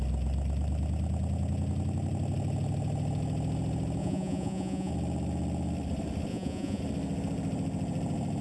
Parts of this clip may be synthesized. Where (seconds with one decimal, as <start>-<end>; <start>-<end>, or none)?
4.0-4.9; 6.3-6.8